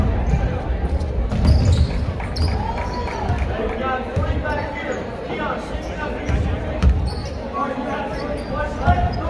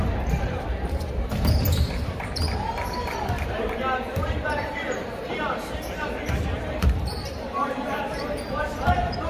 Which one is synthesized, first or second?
second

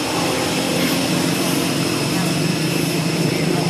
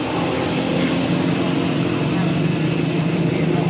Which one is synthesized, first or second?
first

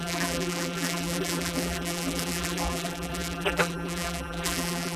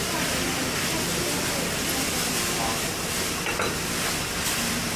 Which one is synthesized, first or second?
first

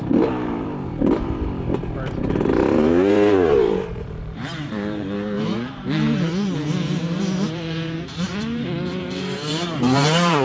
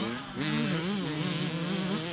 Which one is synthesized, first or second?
first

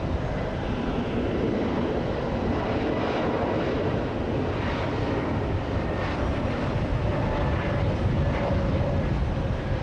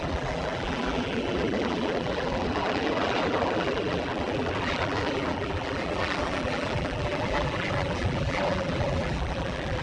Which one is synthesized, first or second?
second